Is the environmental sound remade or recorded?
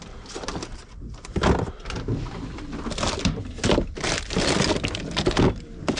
recorded